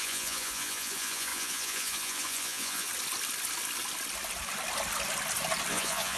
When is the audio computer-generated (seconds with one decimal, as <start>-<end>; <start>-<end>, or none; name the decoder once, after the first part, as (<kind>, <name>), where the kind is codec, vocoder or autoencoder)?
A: 0.0-2.9 (vocoder, Vocos); 5.7-6.2